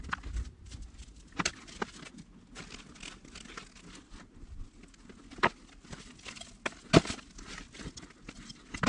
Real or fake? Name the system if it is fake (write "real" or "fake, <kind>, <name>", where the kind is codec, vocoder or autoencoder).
real